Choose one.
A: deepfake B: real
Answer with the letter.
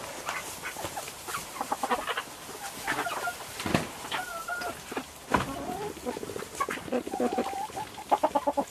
B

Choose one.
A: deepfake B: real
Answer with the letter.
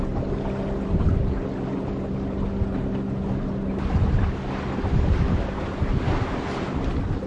B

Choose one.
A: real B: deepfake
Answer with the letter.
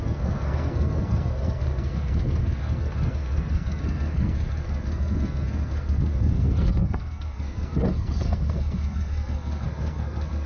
B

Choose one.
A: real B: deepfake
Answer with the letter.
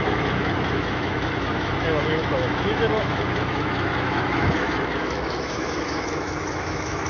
B